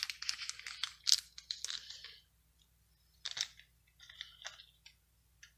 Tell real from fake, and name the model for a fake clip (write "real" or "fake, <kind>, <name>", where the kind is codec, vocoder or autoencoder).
real